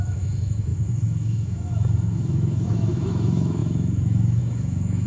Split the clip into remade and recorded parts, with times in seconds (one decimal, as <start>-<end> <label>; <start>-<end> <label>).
0.0-5.1 remade